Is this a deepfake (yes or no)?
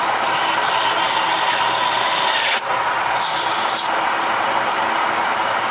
no